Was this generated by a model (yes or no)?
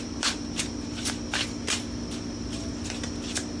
no